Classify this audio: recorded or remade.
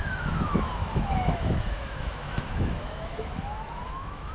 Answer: remade